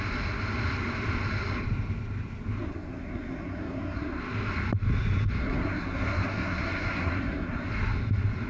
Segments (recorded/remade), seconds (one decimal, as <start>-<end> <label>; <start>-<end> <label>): 0.0-2.6 recorded; 2.6-4.2 remade; 4.2-5.4 recorded; 5.4-7.7 remade; 7.7-8.5 recorded